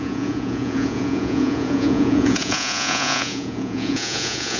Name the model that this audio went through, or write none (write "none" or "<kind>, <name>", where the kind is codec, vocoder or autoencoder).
vocoder, Vocos